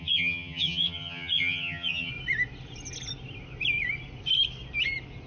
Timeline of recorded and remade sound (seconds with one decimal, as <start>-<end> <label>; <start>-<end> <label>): 0.0-2.1 remade; 2.1-5.3 recorded